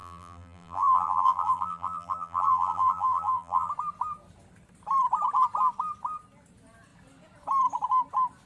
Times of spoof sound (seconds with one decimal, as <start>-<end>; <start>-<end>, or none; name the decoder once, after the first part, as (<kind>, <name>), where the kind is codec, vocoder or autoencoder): 0.0-3.7 (vocoder, BigVGAN v2)